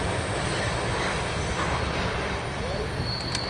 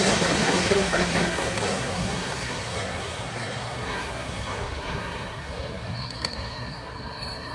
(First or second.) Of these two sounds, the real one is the first